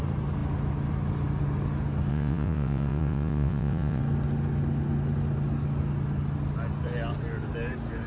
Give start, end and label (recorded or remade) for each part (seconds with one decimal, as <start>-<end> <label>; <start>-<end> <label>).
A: 0.0-2.1 recorded; 2.1-4.0 remade; 4.0-8.1 recorded